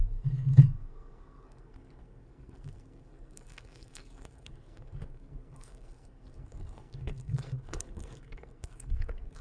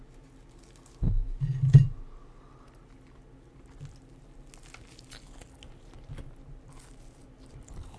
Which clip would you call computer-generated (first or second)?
first